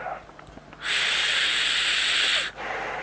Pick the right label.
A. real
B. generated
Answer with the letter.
A